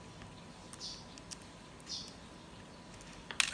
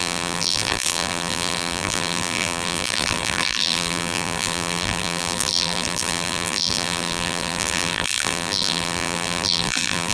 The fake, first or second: second